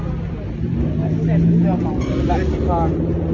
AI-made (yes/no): no